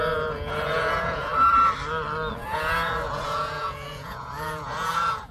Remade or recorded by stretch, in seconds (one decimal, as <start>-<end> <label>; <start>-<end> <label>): 0.0-1.3 remade; 1.3-2.3 recorded; 2.3-5.3 remade